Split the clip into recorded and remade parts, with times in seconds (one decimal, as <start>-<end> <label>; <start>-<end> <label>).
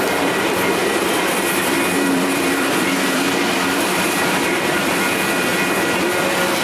0.0-0.8 recorded; 0.8-4.7 remade; 4.7-5.5 recorded; 5.5-6.6 remade